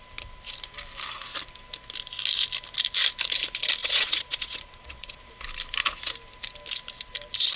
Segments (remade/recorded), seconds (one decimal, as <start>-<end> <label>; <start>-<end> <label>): 0.0-3.8 recorded; 3.8-5.3 remade; 5.3-7.6 recorded